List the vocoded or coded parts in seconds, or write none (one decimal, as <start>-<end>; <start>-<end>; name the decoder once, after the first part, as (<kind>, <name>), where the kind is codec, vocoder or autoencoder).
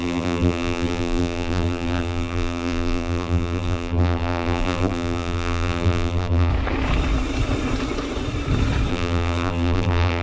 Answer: 0.0-6.5 (vocoder, BigVGAN v2); 8.9-10.2